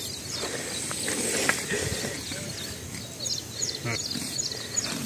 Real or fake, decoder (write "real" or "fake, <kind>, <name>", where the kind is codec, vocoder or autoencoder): real